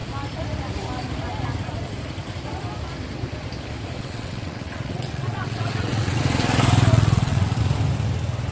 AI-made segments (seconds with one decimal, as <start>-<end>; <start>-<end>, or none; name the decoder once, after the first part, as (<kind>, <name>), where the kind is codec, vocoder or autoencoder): 4.0-6.2 (vocoder, WaveNeXt); 6.9-7.6